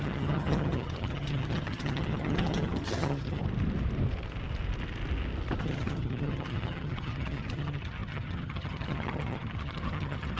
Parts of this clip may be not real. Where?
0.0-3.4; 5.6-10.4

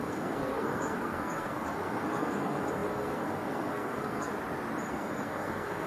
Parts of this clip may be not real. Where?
0.0-4.3; 4.9-5.9

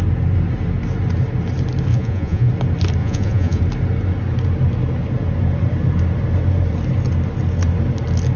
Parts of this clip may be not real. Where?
1.9-2.5; 3.0-3.6

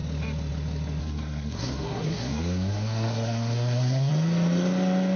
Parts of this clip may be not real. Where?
1.0-4.1

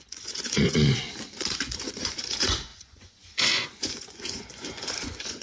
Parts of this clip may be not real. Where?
0.0-5.4